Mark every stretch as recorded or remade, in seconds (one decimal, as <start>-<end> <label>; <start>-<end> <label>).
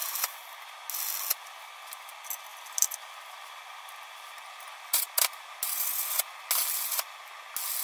0.0-1.4 recorded; 1.4-2.0 remade; 2.0-2.5 recorded; 2.5-6.5 remade; 6.5-7.8 recorded